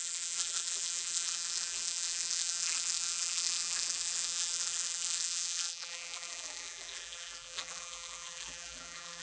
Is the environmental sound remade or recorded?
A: remade